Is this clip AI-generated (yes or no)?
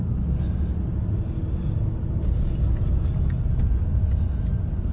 no